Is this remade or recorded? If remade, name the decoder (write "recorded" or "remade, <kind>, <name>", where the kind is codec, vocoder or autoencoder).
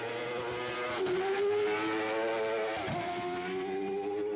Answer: recorded